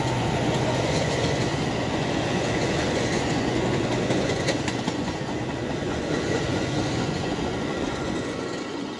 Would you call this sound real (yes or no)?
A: no